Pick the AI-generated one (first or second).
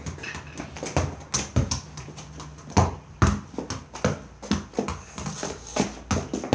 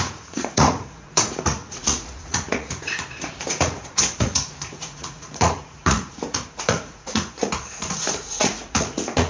second